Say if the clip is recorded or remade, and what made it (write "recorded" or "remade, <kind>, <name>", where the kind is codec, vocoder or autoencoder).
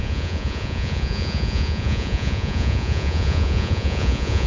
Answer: remade, vocoder, Vocos